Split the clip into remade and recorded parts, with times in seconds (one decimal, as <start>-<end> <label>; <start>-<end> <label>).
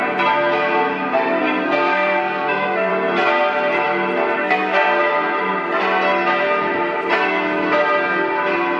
0.0-1.4 recorded; 1.4-2.9 remade; 2.9-4.4 recorded; 4.4-5.0 remade; 5.0-8.8 recorded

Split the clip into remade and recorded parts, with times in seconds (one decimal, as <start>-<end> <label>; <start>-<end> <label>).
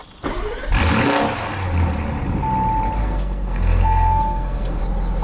0.0-3.0 recorded; 3.0-4.8 remade; 4.8-5.2 recorded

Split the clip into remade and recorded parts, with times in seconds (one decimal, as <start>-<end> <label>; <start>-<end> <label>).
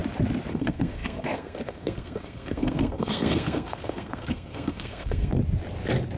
0.0-0.5 recorded; 0.5-5.4 remade; 5.4-6.2 recorded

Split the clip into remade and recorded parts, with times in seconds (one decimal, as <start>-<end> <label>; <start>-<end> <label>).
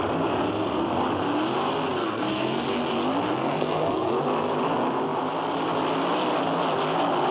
0.0-2.0 recorded; 2.0-2.6 remade; 2.6-3.4 recorded; 3.4-4.1 remade; 4.1-7.3 recorded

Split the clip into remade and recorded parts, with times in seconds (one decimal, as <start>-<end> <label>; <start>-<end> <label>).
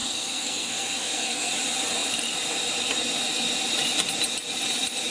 0.0-1.5 remade; 1.5-5.1 recorded